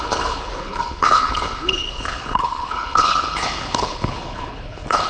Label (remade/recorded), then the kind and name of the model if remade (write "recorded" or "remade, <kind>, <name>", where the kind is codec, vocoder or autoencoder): remade, codec, HILCodec